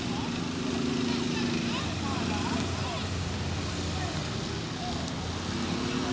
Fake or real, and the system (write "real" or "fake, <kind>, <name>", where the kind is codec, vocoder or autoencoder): real